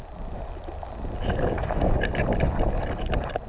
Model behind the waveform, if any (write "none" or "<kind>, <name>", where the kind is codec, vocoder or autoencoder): none